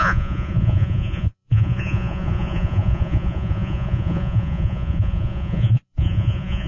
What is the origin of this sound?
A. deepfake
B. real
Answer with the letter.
A